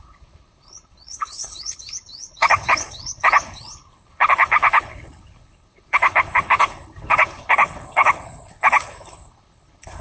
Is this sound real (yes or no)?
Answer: no